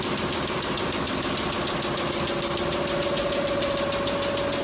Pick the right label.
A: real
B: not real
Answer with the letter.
A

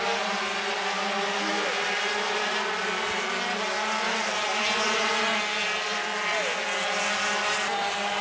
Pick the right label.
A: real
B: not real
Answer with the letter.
A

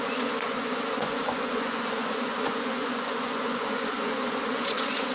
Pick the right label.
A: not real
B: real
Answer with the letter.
A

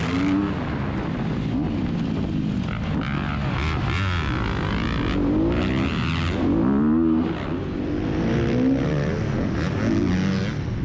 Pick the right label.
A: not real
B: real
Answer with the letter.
B